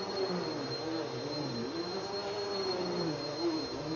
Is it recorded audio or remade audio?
recorded